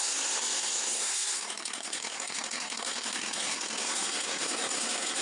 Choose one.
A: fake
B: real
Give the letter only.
A